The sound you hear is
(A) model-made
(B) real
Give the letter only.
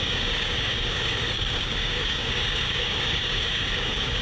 A